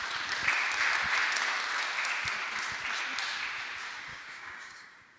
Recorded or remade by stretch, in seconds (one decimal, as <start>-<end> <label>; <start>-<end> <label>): 0.0-4.1 recorded; 4.1-5.2 remade